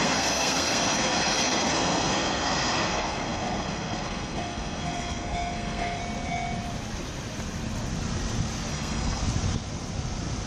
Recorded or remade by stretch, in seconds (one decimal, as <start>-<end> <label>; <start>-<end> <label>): 0.0-6.0 remade; 6.0-8.7 recorded; 8.7-9.2 remade; 9.2-10.5 recorded